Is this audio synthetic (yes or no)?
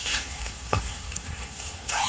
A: yes